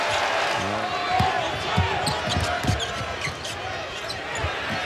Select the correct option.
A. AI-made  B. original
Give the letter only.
B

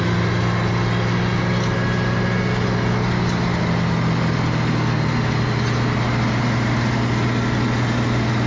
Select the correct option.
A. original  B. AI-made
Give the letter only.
A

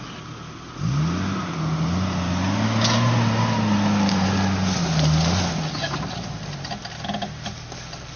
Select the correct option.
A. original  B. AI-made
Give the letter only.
A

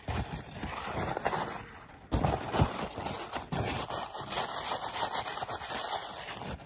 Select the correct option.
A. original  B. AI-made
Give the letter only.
A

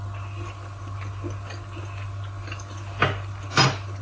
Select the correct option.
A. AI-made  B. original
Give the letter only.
B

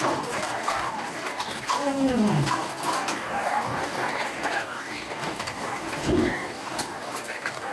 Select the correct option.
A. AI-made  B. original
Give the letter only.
A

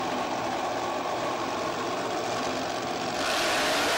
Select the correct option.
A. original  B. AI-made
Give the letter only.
A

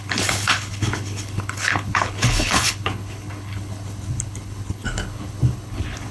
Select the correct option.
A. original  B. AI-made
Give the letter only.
B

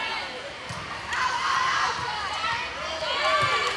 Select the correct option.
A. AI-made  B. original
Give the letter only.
B